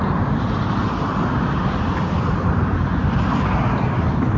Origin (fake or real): real